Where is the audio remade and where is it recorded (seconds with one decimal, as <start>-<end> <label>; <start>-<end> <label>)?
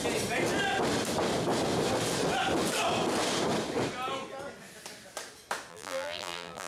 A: 0.0-5.7 recorded; 5.7-6.7 remade